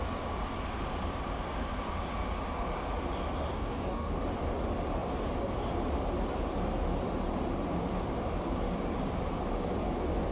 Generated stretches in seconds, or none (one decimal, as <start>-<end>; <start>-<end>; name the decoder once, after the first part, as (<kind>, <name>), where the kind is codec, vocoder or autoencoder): 3.5-4.2 (codec, DAC)